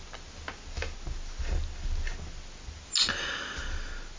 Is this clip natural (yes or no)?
yes